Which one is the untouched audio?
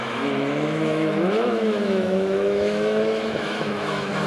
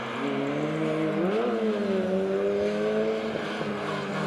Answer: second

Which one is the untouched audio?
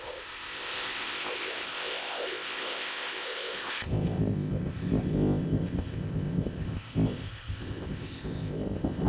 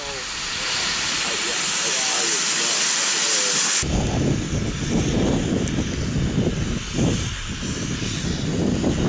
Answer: second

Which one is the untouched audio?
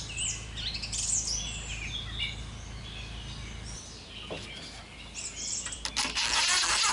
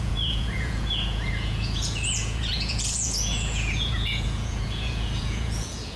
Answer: first